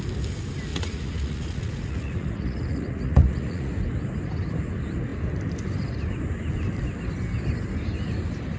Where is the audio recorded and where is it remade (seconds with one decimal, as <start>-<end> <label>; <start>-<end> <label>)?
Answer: 0.0-0.7 recorded; 0.7-3.7 remade; 3.7-8.6 recorded